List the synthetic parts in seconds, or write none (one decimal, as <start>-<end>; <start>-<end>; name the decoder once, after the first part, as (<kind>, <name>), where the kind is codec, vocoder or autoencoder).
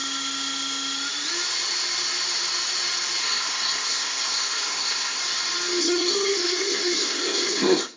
3.2-5.2 (codec, SNAC); 5.8-8.0